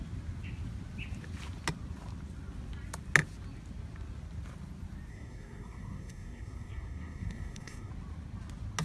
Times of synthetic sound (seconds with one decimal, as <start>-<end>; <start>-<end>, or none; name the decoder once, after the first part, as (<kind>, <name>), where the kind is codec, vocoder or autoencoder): 5.1-7.9 (codec, SNAC)